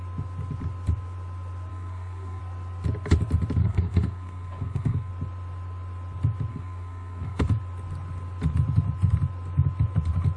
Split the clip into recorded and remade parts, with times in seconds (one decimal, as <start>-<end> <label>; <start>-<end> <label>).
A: 0.0-1.7 recorded; 1.7-2.4 remade; 2.4-3.6 recorded; 3.6-5.1 remade; 5.1-6.5 recorded; 6.5-7.4 remade; 7.4-10.4 recorded